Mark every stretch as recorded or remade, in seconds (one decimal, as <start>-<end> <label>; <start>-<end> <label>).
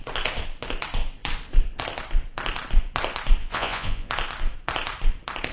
0.0-3.4 recorded; 3.4-4.1 remade; 4.1-5.5 recorded